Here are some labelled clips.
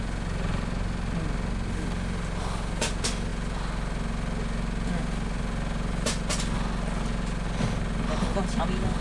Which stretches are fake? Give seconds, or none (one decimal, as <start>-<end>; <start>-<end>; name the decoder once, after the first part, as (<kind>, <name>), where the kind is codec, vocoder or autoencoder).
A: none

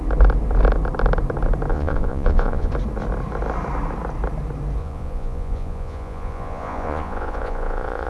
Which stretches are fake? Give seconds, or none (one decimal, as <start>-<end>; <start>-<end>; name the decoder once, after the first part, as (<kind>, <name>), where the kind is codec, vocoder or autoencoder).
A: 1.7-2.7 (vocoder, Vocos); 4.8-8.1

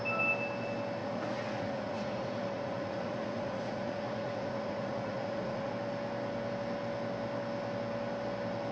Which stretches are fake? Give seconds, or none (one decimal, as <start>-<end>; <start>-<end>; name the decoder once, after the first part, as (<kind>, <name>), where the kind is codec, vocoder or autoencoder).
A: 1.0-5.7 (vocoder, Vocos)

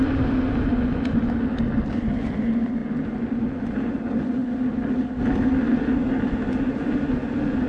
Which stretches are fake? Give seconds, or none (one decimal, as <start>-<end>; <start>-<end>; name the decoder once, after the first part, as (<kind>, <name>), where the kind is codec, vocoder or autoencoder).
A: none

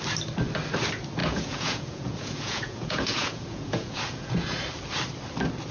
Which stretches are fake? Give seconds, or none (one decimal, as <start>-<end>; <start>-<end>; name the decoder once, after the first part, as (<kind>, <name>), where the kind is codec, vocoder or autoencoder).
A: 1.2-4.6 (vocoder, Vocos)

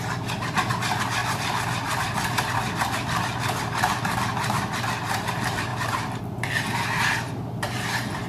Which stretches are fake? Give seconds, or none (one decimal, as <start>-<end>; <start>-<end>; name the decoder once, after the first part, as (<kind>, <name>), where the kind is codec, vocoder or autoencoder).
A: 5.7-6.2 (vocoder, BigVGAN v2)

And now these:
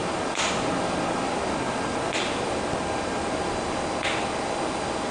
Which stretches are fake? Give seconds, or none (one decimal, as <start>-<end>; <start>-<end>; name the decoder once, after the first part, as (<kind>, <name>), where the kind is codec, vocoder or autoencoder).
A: none